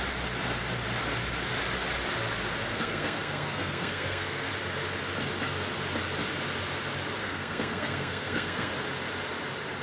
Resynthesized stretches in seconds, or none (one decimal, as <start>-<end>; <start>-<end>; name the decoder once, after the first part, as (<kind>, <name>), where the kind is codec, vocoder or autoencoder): 2.7-4.5 (codec, SNAC); 7.2-8.7